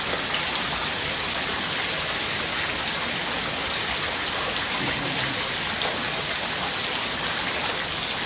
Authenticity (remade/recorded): recorded